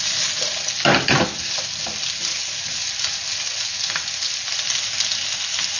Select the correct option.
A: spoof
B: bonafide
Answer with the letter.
B